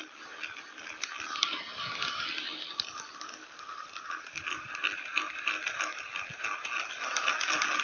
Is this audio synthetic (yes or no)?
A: no